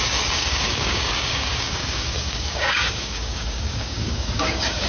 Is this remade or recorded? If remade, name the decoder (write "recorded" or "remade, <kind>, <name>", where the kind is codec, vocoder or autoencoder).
remade, codec, DAC